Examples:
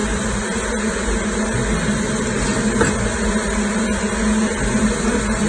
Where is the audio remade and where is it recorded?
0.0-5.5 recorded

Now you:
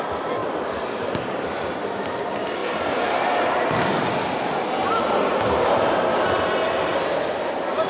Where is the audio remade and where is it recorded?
0.0-0.4 recorded; 0.4-1.1 remade; 1.1-7.9 recorded

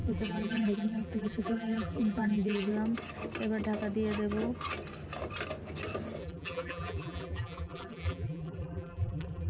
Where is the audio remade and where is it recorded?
0.0-2.7 remade; 2.7-6.2 recorded; 6.2-9.5 remade

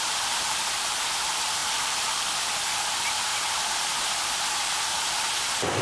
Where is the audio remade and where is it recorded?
0.0-1.6 recorded; 1.6-2.1 remade; 2.1-5.8 recorded

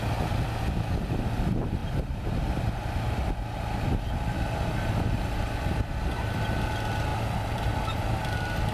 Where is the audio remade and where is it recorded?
0.0-8.7 recorded

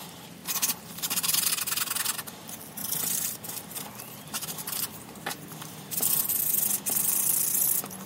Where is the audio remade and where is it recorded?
0.0-0.4 recorded; 0.4-1.5 remade; 1.5-2.8 recorded; 2.8-6.3 remade; 6.3-8.1 recorded

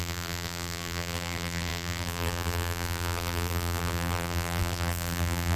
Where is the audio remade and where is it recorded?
0.0-5.5 remade

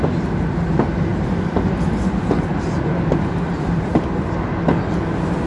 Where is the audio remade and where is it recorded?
0.0-1.1 recorded; 1.1-3.9 remade; 3.9-5.5 recorded